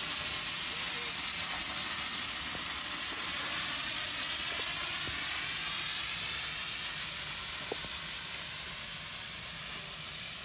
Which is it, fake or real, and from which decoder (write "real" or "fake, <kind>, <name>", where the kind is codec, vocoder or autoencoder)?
real